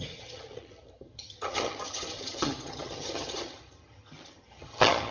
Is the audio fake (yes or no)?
yes